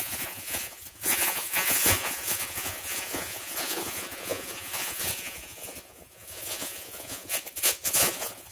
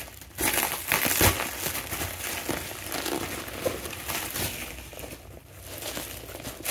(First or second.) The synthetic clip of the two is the first